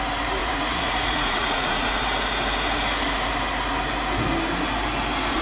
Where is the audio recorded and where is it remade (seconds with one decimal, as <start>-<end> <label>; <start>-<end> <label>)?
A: 0.0-0.4 recorded; 0.4-1.9 remade; 1.9-5.4 recorded